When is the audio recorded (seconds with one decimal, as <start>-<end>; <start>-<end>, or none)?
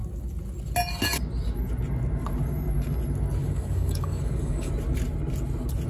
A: 0.0-3.4; 4.7-5.9